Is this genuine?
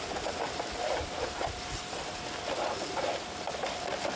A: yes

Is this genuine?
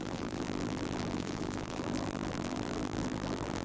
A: no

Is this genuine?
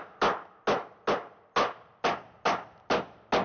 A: yes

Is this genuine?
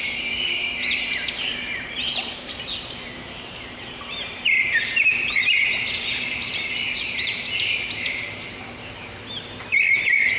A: no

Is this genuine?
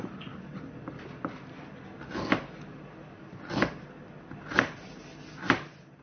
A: yes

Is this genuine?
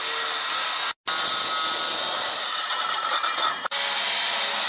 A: yes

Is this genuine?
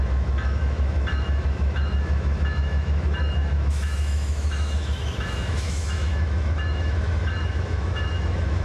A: no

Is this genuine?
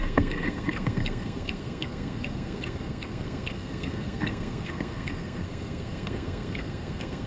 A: no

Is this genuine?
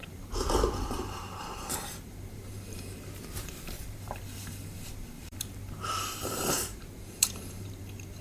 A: no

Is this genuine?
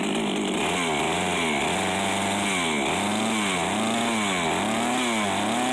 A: yes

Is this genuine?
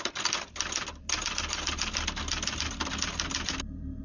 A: yes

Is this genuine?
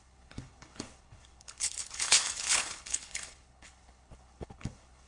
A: no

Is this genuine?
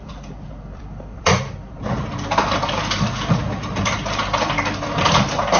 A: no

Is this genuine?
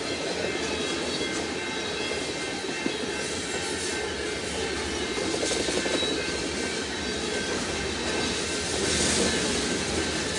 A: yes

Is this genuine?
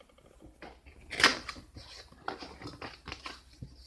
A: yes